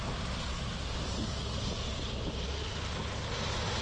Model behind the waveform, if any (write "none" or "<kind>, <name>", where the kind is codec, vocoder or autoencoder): none